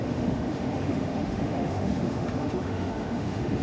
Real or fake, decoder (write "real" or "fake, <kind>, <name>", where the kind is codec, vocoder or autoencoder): fake, autoencoder, DAC-VAE